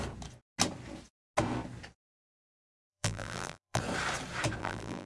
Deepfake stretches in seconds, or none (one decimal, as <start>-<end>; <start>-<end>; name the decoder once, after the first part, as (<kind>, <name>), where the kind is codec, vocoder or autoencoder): 2.2-3.8 (vocoder, BigVGAN v2); 4.6-5.1